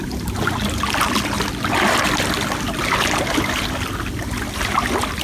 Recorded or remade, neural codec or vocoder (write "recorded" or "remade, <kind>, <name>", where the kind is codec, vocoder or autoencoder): recorded